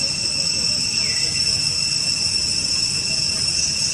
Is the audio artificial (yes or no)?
yes